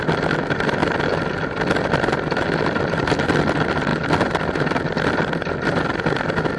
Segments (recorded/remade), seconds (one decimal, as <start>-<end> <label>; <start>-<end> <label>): 0.0-0.8 remade; 0.8-1.8 recorded; 1.8-6.6 remade